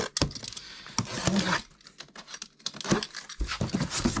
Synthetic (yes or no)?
no